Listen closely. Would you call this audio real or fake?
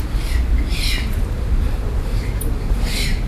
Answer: real